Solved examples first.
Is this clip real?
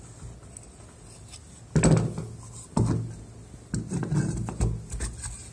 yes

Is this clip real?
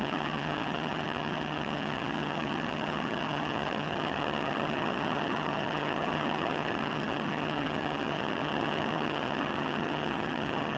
no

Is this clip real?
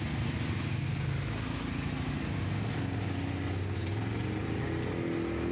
yes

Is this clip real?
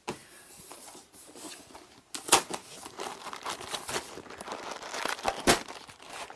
yes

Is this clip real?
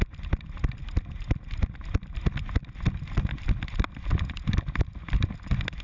yes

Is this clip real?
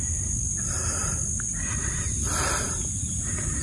yes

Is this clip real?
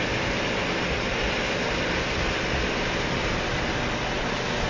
yes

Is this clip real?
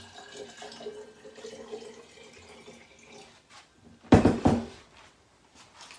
yes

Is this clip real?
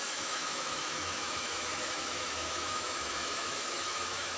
no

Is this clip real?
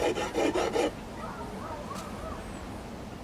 yes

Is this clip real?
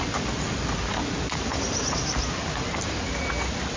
yes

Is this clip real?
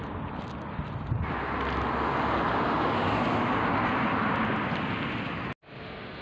yes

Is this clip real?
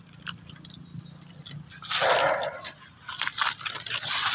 yes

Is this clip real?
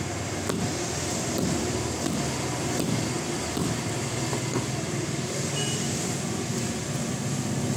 no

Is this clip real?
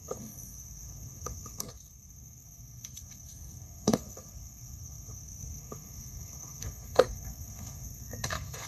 no